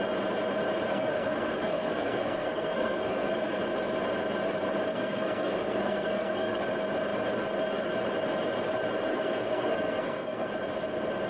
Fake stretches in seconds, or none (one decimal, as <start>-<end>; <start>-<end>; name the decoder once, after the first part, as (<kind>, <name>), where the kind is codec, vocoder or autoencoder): 0.9-3.6 (codec, SNAC); 4.9-6.6; 9.1-10.5